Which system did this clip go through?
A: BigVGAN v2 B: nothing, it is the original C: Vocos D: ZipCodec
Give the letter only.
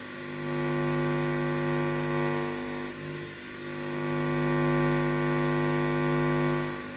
B